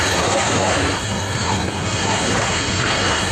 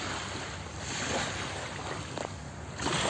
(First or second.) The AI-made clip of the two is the first